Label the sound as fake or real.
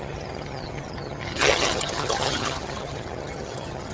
fake